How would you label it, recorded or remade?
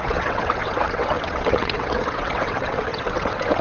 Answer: remade